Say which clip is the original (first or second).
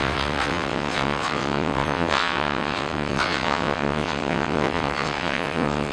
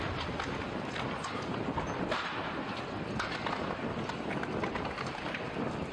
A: second